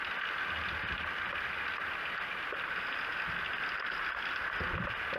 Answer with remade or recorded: recorded